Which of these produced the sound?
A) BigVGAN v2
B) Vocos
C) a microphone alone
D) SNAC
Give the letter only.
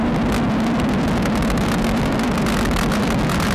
A